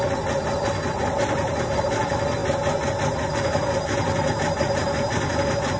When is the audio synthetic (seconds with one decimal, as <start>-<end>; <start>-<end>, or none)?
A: 0.0-2.4; 3.3-5.8